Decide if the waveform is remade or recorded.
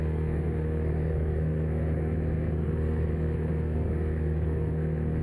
remade